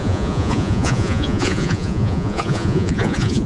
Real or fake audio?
fake